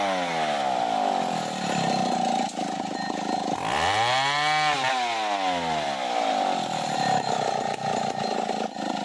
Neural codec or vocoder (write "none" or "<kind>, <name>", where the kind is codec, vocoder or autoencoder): none